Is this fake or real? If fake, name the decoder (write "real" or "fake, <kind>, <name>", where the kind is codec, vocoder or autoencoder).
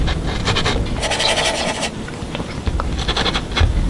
real